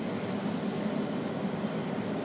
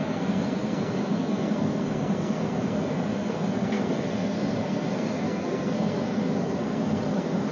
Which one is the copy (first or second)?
second